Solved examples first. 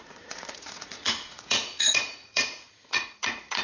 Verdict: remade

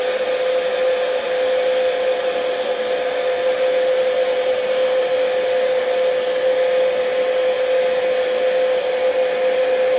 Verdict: recorded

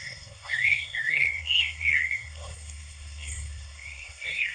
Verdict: remade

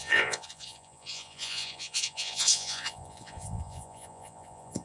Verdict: remade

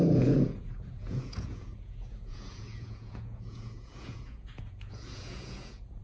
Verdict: remade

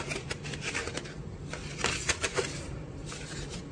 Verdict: recorded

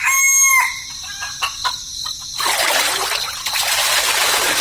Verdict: recorded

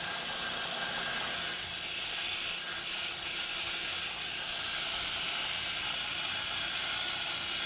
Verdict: recorded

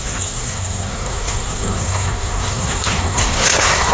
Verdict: remade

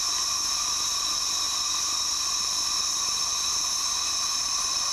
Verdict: recorded